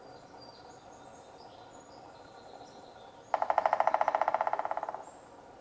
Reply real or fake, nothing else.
real